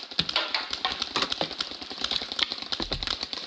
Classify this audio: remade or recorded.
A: recorded